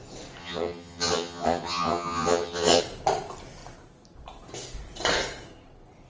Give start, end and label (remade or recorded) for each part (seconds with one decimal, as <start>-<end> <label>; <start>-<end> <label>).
0.0-0.4 recorded; 0.4-2.8 remade; 2.8-6.1 recorded